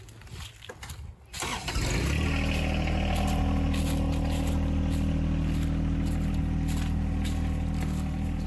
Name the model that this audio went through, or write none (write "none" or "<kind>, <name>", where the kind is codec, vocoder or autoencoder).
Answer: none